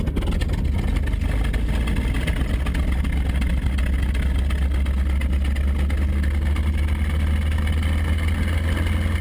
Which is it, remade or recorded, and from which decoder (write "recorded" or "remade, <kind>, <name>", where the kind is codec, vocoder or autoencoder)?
recorded